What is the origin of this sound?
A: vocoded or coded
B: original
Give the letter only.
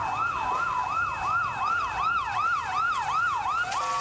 A